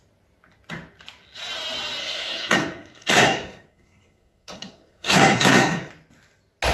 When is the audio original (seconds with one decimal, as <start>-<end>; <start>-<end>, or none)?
0.0-2.0; 5.9-6.7